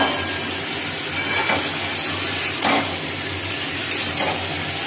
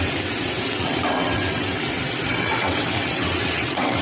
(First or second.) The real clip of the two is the first